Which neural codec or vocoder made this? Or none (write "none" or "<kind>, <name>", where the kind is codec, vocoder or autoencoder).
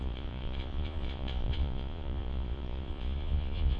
vocoder, Vocos